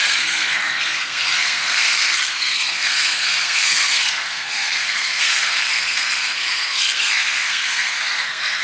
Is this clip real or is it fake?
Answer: fake